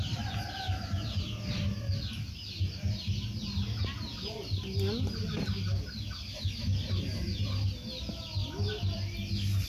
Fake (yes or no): no